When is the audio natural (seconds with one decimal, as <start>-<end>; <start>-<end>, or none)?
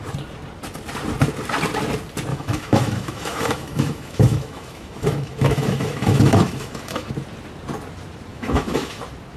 0.0-2.3; 7.1-8.3; 9.0-9.4